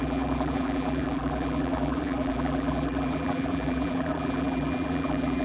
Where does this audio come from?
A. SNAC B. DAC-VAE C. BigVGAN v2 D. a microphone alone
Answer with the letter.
C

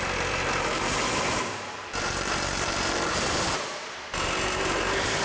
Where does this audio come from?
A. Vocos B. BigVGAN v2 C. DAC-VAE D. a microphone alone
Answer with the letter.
B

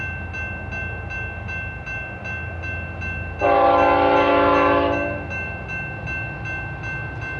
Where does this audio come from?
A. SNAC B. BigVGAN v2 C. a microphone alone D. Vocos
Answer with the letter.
C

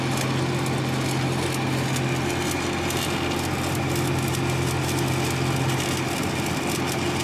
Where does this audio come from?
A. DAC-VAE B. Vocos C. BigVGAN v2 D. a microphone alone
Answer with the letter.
D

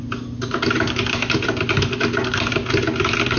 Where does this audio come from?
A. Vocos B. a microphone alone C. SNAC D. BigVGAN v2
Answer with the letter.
B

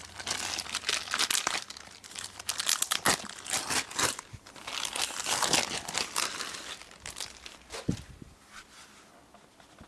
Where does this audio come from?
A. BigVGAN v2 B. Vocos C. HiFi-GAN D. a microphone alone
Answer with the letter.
D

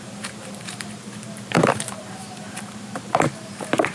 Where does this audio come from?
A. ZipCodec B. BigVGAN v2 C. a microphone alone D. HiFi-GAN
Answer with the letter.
B